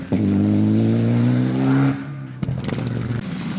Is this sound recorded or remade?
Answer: recorded